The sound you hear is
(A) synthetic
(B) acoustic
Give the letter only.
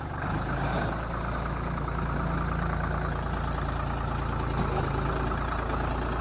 B